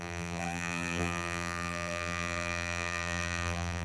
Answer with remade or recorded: remade